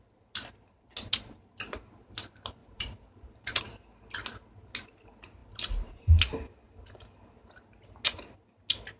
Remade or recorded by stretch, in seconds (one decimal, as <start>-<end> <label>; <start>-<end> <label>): 0.0-2.6 recorded; 2.6-3.6 remade; 3.6-9.0 recorded